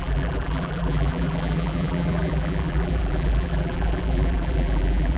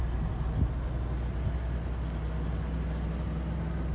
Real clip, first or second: second